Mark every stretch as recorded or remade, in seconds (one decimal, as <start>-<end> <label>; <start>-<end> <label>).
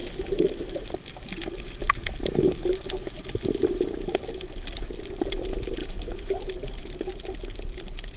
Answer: 0.0-0.9 remade; 0.9-5.8 recorded; 5.8-6.4 remade; 6.4-8.2 recorded